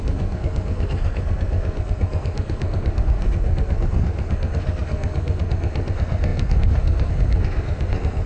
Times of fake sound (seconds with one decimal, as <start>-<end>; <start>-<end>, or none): 0.0-8.3